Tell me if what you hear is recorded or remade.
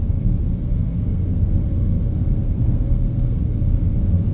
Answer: remade